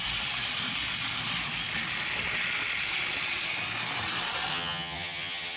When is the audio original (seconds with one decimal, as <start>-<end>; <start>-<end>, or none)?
0.0-4.5